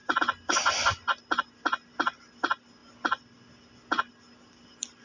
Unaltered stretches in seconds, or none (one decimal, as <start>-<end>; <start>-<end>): 0.0-5.0